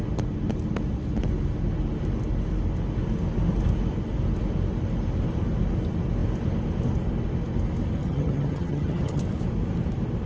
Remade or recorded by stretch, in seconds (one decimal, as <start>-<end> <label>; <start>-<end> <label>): 0.0-8.0 recorded; 8.0-9.2 remade; 9.2-10.3 recorded